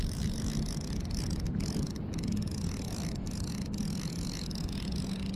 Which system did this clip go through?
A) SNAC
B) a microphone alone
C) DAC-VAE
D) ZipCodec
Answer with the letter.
B